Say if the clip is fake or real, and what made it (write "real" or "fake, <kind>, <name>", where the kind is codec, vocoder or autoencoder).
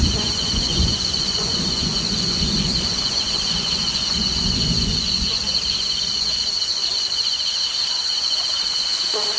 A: fake, vocoder, Vocos